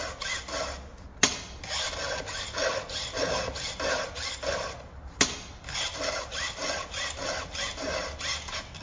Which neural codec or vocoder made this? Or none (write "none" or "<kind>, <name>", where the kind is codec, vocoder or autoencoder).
none